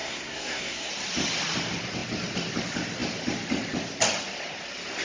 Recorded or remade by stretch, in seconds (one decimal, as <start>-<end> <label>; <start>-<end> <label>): 0.0-0.9 remade; 0.9-5.0 recorded